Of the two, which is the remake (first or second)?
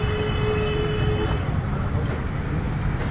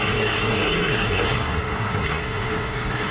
second